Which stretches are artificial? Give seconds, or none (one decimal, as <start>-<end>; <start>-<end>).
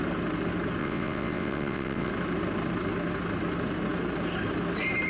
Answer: 0.8-2.1